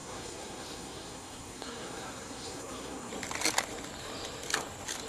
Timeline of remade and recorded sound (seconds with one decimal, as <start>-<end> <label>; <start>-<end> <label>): 0.0-3.1 remade; 3.1-5.1 recorded